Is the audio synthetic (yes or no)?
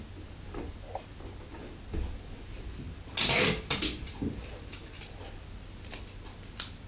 no